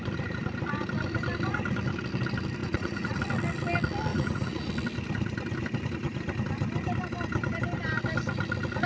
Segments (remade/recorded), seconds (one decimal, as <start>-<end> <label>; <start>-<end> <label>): 0.0-2.6 recorded; 2.6-3.2 remade; 3.2-4.1 recorded; 4.1-4.7 remade; 4.7-8.9 recorded